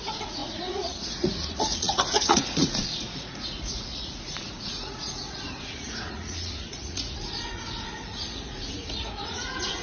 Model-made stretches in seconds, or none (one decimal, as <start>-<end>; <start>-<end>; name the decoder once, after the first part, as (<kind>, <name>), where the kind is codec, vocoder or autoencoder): 0.0-9.8 (vocoder, Vocos)